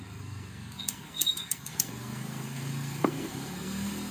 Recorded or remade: remade